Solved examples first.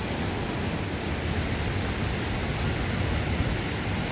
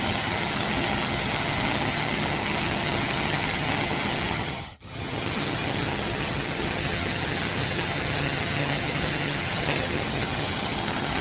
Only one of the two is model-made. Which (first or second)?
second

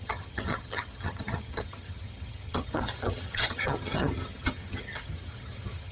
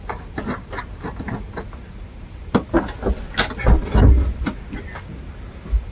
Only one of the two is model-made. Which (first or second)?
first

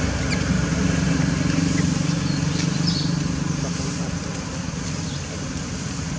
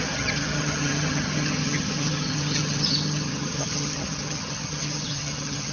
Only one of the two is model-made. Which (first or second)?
second